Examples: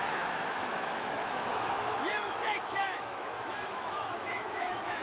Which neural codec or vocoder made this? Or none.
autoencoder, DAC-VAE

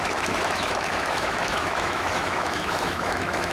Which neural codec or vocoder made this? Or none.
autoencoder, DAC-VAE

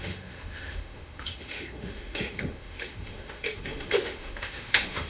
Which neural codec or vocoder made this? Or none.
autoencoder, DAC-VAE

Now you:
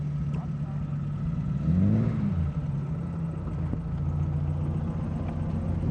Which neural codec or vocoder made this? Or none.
none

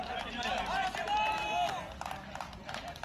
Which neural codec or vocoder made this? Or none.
none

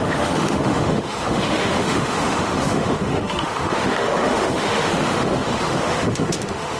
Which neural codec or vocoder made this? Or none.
autoencoder, DAC-VAE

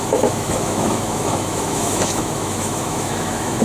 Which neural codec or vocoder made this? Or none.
autoencoder, DAC-VAE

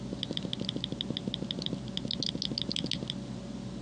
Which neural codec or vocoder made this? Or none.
none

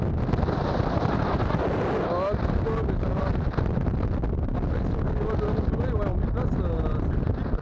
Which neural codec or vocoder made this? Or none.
none